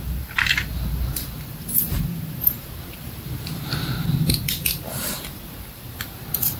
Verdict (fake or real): fake